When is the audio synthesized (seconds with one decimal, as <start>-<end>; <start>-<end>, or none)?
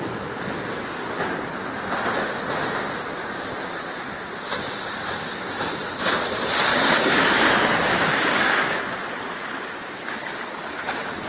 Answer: 6.7-8.8